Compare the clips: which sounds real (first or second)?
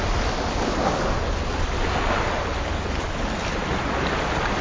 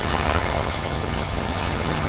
first